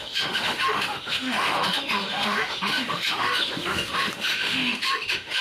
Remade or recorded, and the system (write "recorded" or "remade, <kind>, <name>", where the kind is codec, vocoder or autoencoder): remade, autoencoder, DAC-VAE